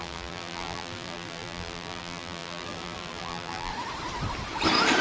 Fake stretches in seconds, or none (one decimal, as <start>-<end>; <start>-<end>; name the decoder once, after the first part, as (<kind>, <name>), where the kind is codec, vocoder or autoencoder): 0.0-3.7 (vocoder, BigVGAN v2)